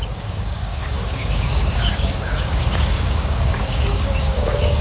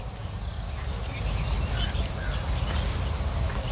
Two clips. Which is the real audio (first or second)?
second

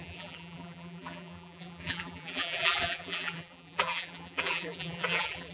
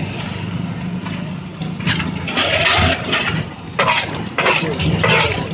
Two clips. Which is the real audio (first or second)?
second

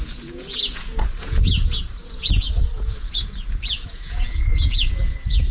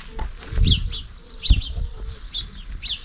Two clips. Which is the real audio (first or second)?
second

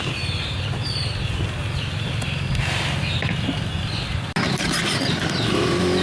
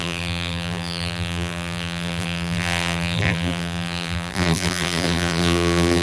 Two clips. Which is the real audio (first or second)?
first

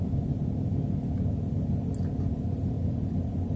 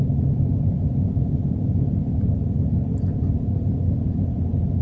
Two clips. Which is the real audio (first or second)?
first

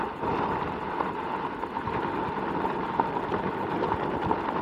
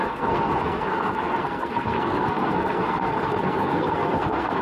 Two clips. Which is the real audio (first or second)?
first